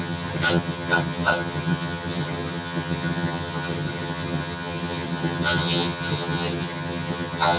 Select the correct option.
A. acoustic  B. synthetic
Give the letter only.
B